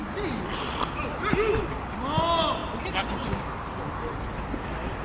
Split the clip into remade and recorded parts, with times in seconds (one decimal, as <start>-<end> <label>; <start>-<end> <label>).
0.0-5.0 recorded